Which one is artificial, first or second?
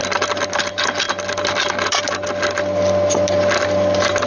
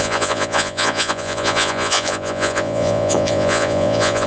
second